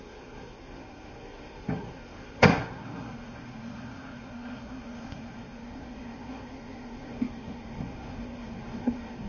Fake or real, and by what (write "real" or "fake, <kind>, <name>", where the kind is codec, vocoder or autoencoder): fake, codec, SNAC